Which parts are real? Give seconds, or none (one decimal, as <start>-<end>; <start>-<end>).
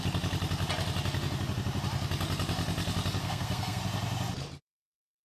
0.0-3.2; 3.8-5.2